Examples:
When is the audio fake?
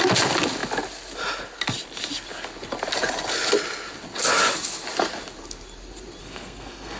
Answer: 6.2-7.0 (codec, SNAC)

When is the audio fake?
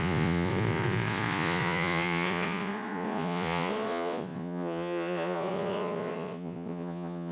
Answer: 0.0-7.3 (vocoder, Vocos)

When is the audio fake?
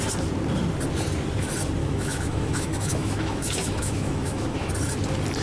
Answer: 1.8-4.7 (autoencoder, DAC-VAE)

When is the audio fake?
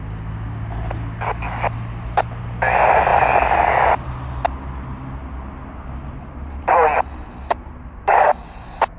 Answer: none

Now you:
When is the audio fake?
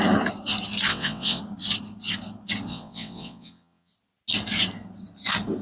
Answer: 0.9-1.4 (vocoder, WaveNeXt); 2.7-3.9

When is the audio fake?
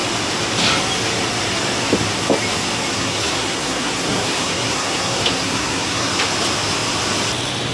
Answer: 2.9-6.1 (codec, SNAC)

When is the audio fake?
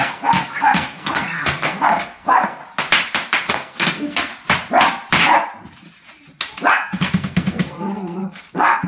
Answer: 0.0-2.6 (codec, SNAC); 3.5-4.3; 6.7-8.9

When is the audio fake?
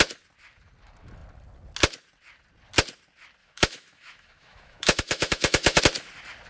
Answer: 3.4-5.8 (autoencoder, DAC-VAE)